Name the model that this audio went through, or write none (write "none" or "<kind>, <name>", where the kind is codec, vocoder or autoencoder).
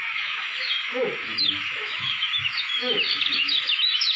autoencoder, DAC-VAE